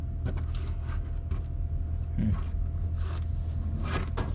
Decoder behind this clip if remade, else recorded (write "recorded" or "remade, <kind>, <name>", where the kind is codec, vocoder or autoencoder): recorded